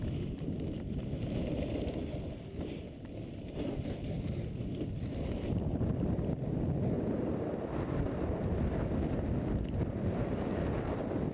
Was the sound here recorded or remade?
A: recorded